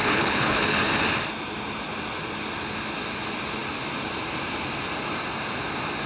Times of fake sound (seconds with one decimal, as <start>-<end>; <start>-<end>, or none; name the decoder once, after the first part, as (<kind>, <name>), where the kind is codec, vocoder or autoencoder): 0.0-0.8 (codec, HILCodec)